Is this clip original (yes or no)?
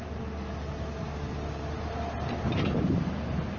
yes